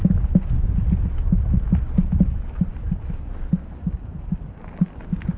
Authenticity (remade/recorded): recorded